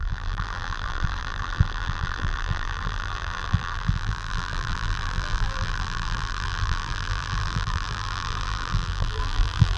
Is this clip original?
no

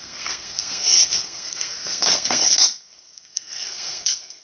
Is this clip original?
no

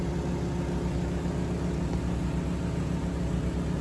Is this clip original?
yes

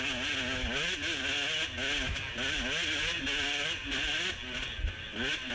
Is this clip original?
yes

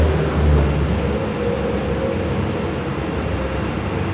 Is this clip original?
yes